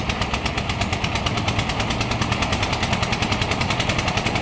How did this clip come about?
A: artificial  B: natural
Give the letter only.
B